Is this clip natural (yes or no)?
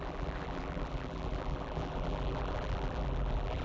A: no